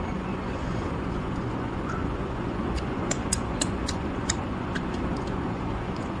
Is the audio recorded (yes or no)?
no